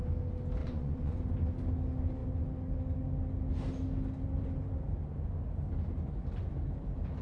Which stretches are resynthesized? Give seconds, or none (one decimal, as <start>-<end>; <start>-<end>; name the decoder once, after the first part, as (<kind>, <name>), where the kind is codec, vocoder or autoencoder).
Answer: 0.6-1.2 (vocoder, Vocos)